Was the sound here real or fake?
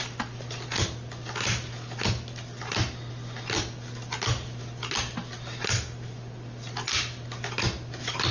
real